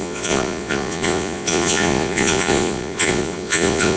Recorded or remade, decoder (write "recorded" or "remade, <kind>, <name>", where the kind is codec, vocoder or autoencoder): remade, vocoder, Vocos